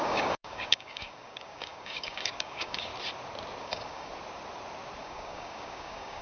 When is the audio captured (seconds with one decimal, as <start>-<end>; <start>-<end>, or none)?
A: 2.9-3.6; 4.1-5.0